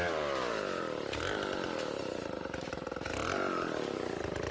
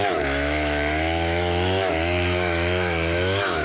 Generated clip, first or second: second